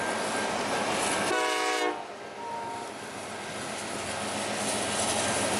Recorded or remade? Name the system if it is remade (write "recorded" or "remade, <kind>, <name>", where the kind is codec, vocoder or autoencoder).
recorded